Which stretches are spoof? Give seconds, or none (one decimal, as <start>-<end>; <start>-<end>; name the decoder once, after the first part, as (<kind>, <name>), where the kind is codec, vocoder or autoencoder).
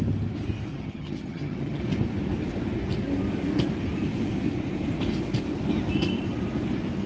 0.7-1.8 (vocoder, HiFi-GAN)